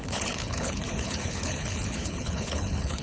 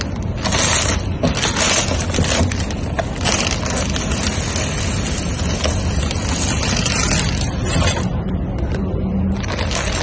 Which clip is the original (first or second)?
second